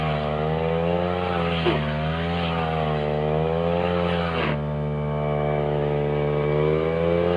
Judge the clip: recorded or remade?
recorded